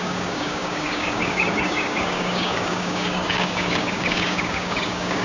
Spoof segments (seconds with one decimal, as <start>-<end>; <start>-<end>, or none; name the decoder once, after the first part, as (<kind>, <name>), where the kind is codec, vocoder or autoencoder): 0.0-5.2 (codec, DAC)